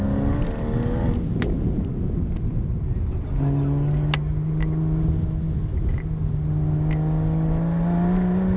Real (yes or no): yes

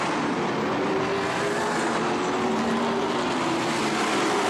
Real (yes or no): yes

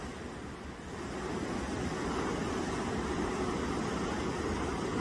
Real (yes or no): yes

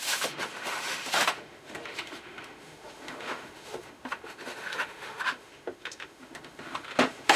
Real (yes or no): no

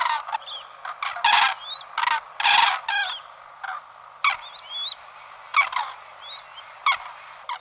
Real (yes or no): yes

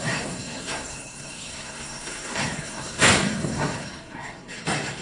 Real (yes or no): no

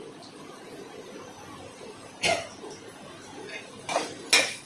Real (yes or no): yes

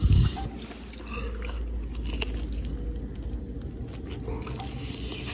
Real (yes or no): yes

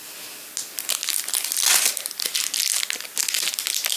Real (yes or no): yes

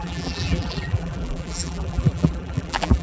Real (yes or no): no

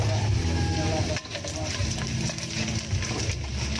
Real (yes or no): no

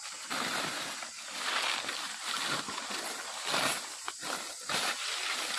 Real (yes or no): yes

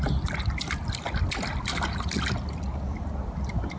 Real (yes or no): yes